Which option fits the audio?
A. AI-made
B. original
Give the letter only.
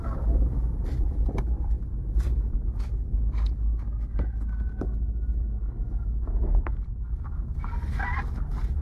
B